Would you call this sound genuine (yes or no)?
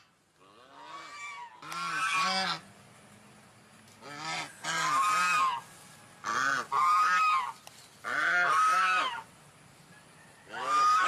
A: yes